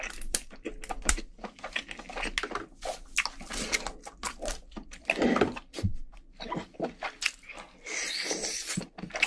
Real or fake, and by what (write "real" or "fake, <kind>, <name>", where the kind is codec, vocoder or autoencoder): real